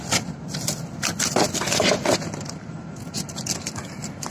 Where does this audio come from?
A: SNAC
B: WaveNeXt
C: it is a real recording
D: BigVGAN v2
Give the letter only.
C